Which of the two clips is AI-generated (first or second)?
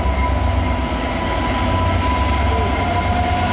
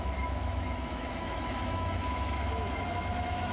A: second